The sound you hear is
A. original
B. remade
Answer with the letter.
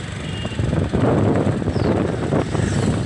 A